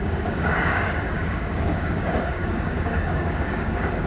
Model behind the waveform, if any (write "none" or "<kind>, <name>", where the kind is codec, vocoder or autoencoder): codec, DAC